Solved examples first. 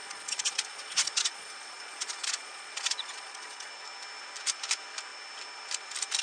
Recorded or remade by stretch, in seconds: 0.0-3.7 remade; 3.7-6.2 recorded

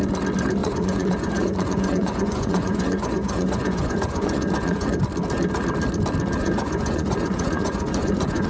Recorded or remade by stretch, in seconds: 0.0-0.6 recorded; 0.6-5.0 remade; 5.0-6.4 recorded; 6.4-8.5 remade

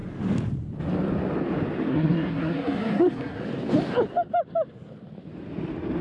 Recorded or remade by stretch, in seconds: 0.0-1.9 recorded; 1.9-3.4 remade; 3.4-6.0 recorded

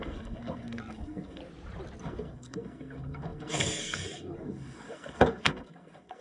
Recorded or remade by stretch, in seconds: 0.0-1.4 remade; 1.4-2.0 recorded; 2.0-6.2 remade

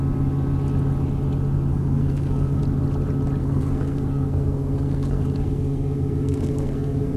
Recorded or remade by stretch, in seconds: 0.0-1.7 recorded; 1.7-2.6 remade; 2.6-3.4 recorded; 3.4-7.2 remade

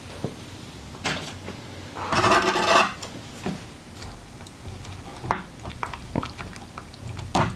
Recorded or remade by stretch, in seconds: 0.0-7.6 recorded

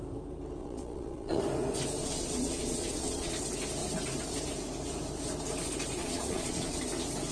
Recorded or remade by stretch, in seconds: 0.0-0.6 recorded; 0.6-1.4 remade; 1.4-2.0 recorded; 2.0-3.3 remade; 3.3-6.0 recorded; 6.0-6.8 remade; 6.8-7.3 recorded

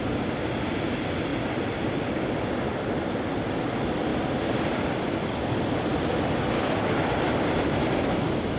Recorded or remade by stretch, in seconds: 0.0-8.6 recorded